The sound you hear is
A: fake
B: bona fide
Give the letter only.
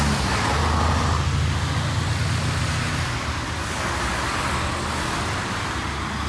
B